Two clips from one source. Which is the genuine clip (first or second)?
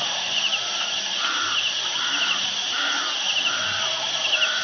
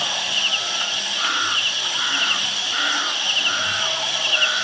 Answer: second